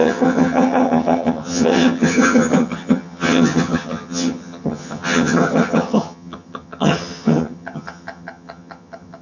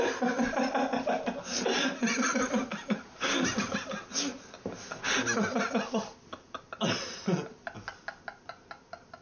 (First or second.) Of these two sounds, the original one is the second